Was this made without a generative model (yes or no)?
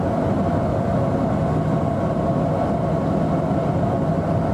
yes